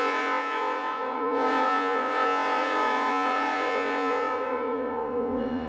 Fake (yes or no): yes